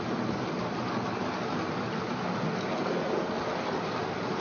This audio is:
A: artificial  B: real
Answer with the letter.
B